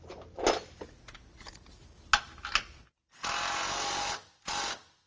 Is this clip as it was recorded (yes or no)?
yes